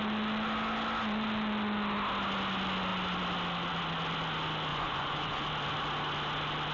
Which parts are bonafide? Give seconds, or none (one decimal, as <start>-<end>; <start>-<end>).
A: 0.0-4.7; 5.4-6.7